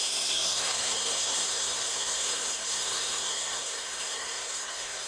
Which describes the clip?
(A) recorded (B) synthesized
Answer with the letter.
B